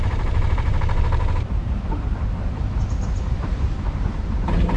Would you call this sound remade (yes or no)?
yes